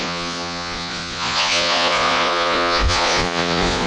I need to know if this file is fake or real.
fake